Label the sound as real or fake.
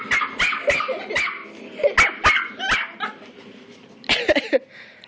real